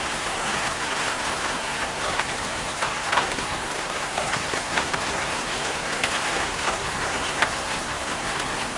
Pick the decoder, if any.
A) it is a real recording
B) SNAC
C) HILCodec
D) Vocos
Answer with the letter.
B